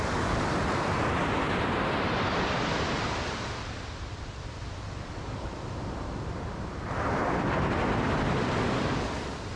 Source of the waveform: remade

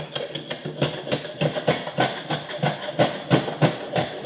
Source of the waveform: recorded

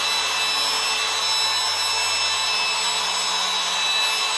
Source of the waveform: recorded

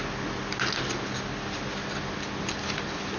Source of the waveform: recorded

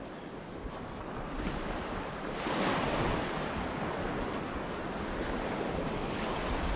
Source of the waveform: recorded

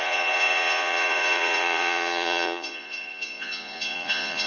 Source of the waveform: remade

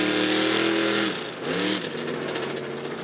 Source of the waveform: recorded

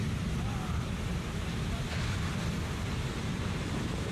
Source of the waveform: remade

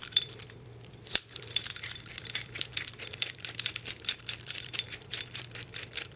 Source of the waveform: remade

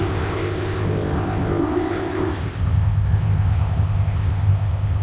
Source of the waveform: remade